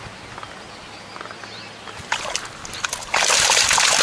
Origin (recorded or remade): recorded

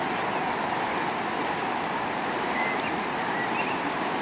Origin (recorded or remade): recorded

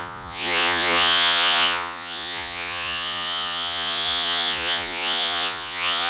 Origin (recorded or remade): remade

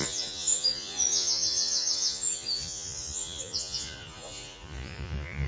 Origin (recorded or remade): remade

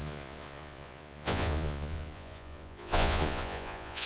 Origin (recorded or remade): remade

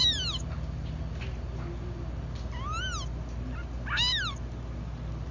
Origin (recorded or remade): recorded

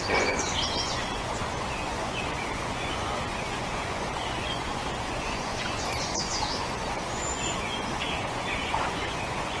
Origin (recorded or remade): remade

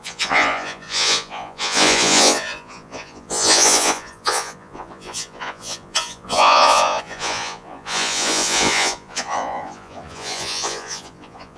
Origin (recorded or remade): remade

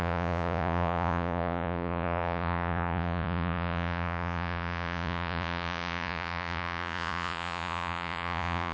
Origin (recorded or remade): remade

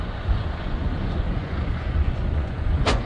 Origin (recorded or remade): remade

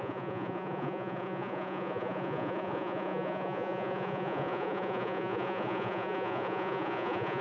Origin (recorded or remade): remade